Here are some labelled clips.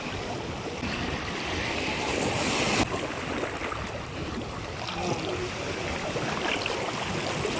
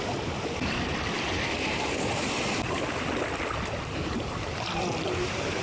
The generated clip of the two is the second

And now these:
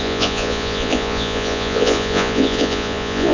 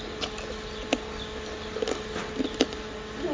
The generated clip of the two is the first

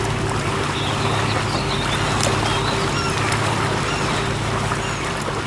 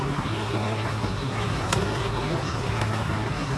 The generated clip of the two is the second